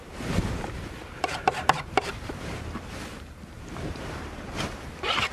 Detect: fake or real fake